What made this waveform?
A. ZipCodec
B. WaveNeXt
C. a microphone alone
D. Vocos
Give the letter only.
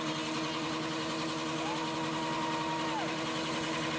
C